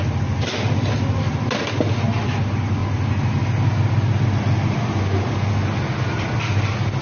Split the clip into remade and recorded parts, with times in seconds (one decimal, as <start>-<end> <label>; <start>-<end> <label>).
0.0-7.0 recorded